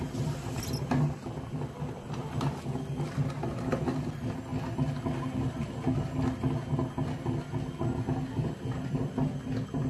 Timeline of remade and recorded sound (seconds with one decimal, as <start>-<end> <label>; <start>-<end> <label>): 0.0-9.9 recorded